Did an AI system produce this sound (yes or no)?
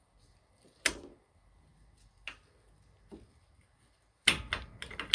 no